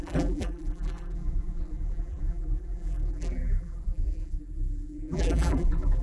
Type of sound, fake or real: fake